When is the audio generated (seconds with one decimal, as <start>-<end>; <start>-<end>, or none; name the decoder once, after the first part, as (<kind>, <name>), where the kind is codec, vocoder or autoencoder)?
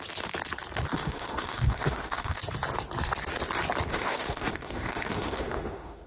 0.9-2.4 (autoencoder, DAC-VAE); 3.9-6.1